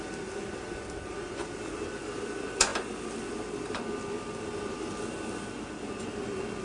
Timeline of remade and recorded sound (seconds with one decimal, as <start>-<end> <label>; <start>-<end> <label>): 0.0-6.6 recorded